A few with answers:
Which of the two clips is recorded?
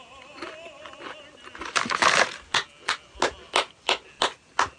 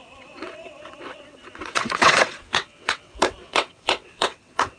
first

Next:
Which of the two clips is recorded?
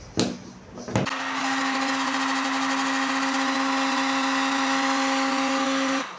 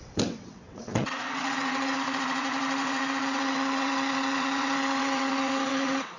first